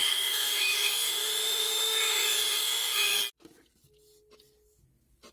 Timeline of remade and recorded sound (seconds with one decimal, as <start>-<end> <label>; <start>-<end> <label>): 0.0-3.2 remade; 3.2-5.3 recorded